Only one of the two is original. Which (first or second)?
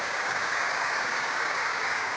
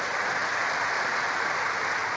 second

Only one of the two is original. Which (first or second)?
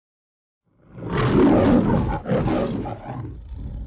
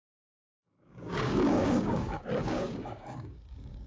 first